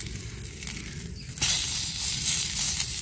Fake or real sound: real